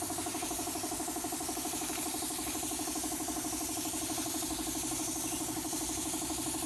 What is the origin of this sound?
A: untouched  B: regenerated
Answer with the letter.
A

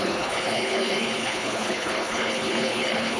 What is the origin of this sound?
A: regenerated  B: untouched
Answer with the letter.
A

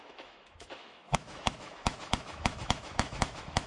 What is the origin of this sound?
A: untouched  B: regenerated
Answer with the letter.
B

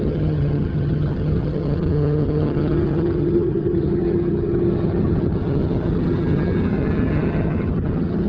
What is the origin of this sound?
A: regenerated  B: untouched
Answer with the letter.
A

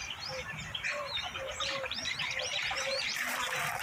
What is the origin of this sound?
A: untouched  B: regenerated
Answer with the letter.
B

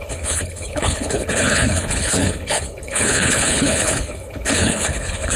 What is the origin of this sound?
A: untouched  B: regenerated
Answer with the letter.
B